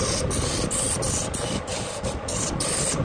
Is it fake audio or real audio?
real